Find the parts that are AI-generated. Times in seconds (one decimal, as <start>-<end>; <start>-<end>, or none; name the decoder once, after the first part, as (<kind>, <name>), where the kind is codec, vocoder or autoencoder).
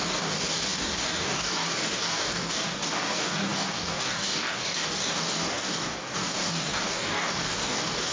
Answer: 0.0-8.1 (codec, DAC)